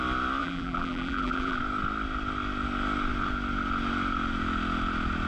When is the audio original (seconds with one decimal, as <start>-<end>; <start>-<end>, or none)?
0.0-0.4; 1.6-5.3